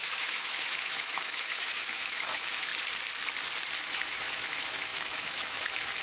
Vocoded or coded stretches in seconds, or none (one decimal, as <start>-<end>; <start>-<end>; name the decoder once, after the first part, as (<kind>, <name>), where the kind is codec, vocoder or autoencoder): 0.0-2.7 (autoencoder, DAC-VAE); 3.8-6.0